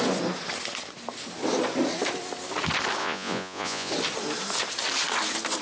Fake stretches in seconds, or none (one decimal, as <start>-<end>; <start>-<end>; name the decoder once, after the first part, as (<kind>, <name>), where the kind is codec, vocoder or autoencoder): 3.0-3.9 (vocoder, Vocos)